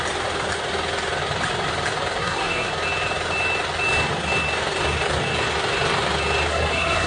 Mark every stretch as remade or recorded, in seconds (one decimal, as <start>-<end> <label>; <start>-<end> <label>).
0.0-2.2 recorded; 2.2-2.7 remade; 2.7-6.5 recorded; 6.5-7.1 remade